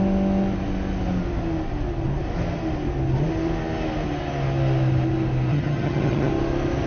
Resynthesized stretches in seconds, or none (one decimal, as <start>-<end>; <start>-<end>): 5.5-6.3